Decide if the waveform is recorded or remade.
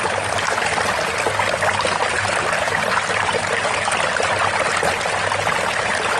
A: recorded